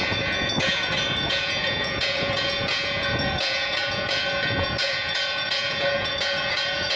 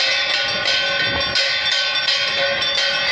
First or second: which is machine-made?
first